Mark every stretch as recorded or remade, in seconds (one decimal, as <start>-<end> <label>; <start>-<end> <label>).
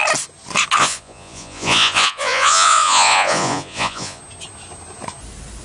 0.0-0.8 recorded; 0.8-4.2 remade; 4.2-5.6 recorded